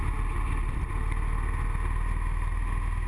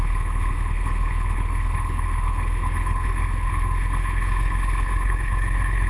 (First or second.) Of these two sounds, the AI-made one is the second